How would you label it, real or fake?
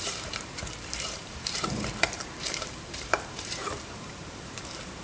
fake